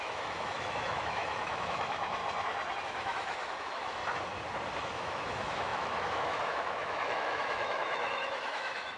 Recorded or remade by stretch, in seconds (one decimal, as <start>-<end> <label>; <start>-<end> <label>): 0.0-2.2 remade; 2.2-2.8 recorded; 2.8-4.0 remade; 4.0-4.8 recorded; 4.8-9.0 remade